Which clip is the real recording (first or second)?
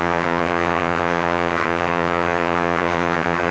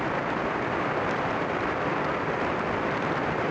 second